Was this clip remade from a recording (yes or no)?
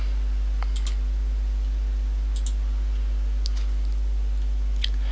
no